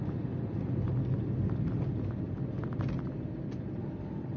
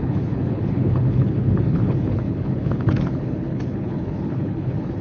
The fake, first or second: second